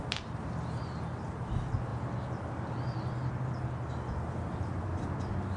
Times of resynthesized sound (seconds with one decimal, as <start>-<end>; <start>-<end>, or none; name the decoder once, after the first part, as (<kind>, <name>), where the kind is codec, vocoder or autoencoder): none